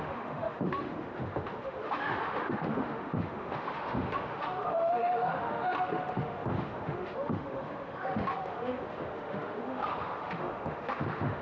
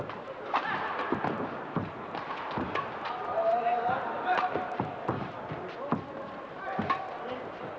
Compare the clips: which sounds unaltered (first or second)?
second